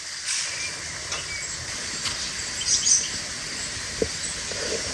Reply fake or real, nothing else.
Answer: real